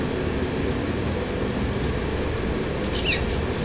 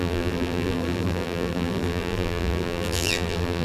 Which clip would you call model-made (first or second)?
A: second